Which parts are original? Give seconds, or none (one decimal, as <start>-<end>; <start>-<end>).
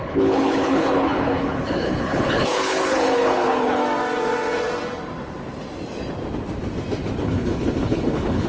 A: 3.8-7.2